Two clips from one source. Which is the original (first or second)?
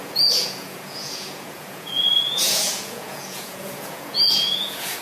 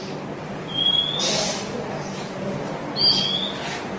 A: second